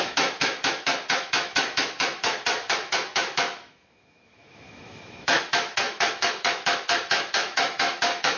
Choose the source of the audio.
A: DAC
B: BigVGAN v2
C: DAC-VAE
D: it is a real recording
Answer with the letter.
C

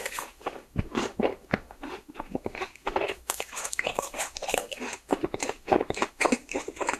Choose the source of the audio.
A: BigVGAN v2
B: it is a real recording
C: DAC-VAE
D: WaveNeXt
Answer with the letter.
C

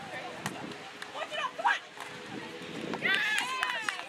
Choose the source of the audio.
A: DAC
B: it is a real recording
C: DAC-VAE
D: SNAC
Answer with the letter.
B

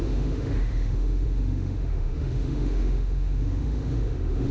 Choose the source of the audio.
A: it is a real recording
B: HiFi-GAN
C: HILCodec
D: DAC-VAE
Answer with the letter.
D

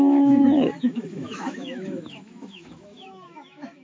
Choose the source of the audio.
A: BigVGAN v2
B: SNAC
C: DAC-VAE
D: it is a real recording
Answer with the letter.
C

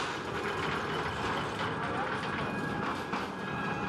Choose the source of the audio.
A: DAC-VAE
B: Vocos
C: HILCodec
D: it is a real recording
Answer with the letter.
D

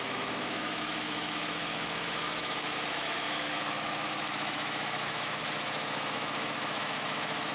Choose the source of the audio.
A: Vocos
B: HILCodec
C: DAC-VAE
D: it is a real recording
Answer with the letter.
C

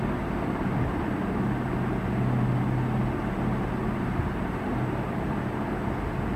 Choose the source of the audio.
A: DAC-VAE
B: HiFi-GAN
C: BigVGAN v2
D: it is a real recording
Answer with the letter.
D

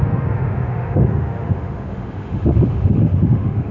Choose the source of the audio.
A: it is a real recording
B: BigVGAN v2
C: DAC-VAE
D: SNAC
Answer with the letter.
C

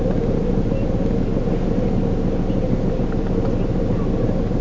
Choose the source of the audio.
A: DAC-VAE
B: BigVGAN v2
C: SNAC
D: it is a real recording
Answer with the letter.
D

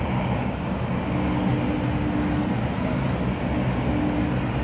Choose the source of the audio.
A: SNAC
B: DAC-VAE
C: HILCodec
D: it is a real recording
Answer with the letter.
D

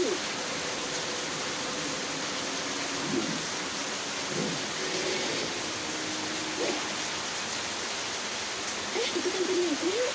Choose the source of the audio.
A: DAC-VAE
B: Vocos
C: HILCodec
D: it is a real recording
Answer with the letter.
D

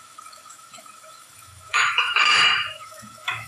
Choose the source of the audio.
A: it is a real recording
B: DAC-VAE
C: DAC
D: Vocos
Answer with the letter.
B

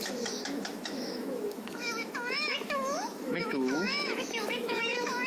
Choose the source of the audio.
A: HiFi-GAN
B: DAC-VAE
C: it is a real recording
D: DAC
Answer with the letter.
B